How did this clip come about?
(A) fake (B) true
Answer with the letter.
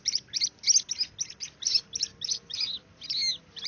B